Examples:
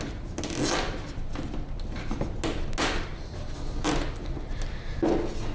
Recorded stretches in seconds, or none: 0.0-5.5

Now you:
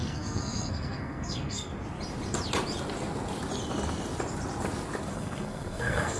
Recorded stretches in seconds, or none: 1.7-5.1

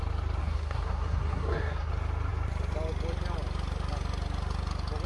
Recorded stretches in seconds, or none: 0.0-0.4; 1.9-5.1

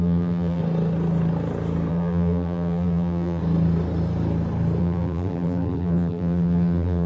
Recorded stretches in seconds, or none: 0.6-1.9; 3.4-4.8

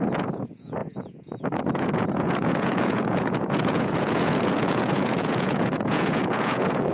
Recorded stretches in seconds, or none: none

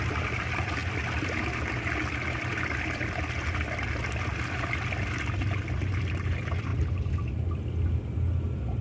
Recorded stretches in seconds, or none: 0.0-8.8

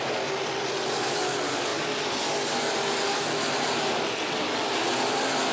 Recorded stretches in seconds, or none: 0.0-5.5